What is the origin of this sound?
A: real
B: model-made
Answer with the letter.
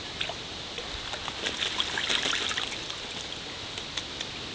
A